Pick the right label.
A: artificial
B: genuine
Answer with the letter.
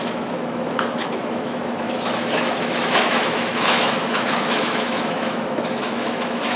A